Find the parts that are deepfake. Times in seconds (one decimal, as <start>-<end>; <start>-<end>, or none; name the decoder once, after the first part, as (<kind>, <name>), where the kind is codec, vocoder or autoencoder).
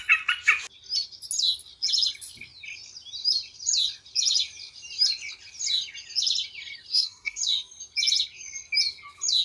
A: 6.9-7.4 (codec, SNAC)